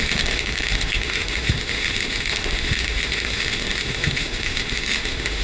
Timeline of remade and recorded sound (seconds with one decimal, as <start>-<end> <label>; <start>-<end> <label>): 0.0-5.4 remade